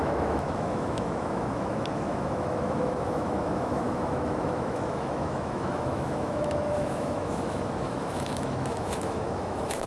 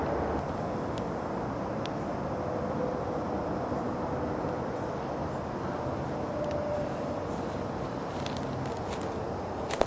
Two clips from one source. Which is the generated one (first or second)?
first